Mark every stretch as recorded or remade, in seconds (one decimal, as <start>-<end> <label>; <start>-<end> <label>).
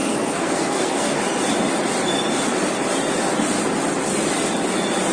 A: 0.0-1.2 remade; 1.2-5.1 recorded